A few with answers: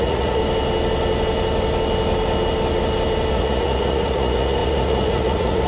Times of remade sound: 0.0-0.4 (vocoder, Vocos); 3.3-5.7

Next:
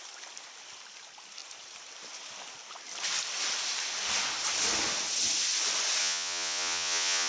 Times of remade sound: 6.0-7.3 (vocoder, Vocos)

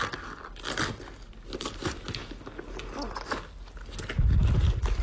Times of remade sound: none

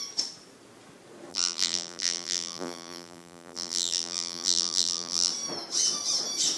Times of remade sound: 1.3-5.3 (vocoder, BigVGAN v2)

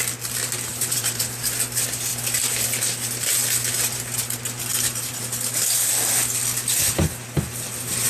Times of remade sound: 0.7-1.2 (vocoder, BigVGAN v2)

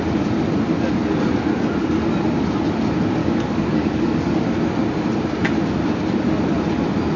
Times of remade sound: 3.2-4.3 (codec, DAC)

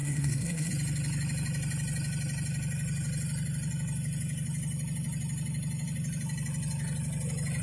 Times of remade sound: 0.0-0.7 (codec, SNAC)

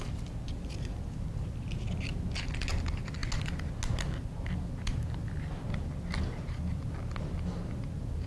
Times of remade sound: none